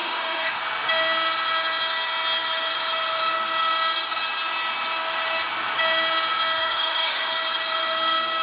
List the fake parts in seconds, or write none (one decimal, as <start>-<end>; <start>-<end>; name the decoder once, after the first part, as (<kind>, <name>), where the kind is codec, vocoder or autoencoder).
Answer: 0.0-0.6 (autoencoder, DAC-VAE); 6.6-7.3